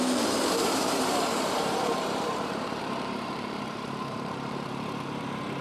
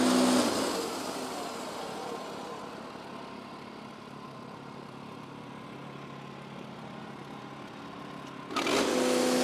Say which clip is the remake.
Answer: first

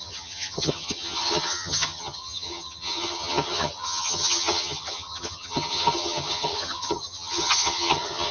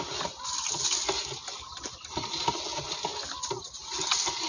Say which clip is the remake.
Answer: first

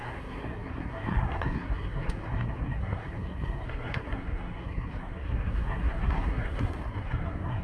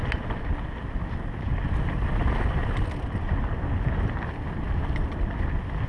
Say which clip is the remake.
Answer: first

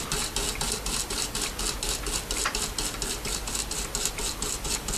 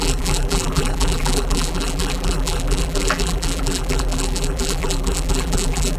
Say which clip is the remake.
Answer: second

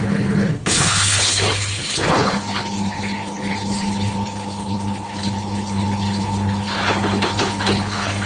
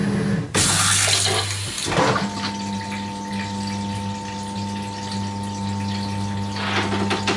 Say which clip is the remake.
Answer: first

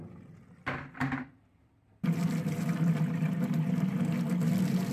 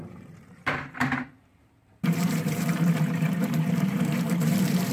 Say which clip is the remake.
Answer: second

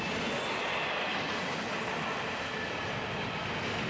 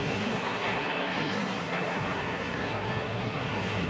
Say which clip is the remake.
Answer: second